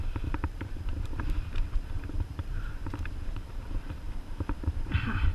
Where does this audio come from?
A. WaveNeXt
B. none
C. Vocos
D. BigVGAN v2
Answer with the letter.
D